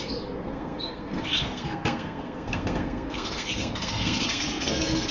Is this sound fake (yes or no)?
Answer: yes